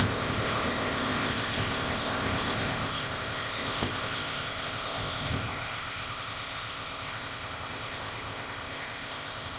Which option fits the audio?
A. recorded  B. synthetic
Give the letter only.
B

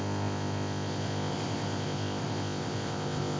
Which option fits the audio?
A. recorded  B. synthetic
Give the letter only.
B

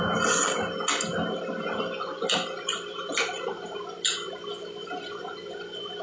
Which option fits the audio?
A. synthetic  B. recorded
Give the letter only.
B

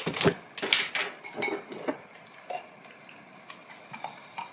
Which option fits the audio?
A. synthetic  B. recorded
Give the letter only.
B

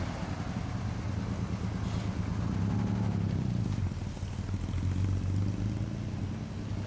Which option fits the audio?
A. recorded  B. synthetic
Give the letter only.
A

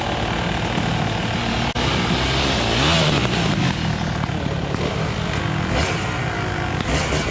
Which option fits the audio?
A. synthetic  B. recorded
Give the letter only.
B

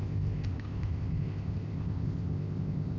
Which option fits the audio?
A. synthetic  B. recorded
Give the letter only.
A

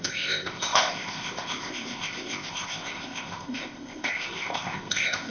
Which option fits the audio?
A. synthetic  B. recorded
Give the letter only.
A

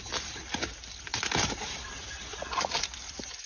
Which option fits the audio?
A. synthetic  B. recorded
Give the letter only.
B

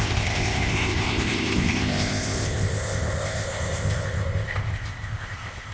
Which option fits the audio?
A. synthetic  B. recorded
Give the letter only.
A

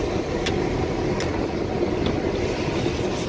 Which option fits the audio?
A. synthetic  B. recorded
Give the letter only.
B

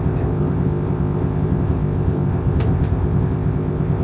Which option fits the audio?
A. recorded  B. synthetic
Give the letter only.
B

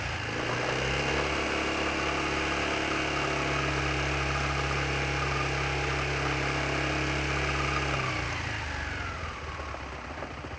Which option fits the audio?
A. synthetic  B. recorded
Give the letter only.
B